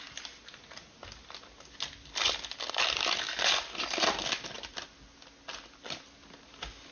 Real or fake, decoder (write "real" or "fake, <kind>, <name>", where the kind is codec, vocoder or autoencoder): real